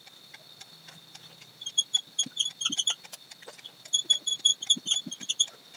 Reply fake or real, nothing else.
real